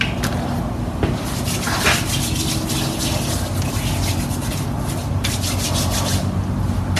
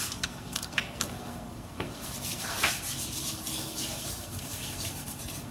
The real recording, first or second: first